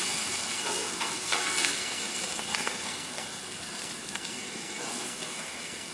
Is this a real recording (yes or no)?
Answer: no